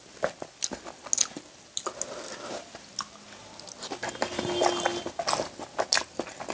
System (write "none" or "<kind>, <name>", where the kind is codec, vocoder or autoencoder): none